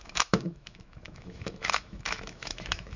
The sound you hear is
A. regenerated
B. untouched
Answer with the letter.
A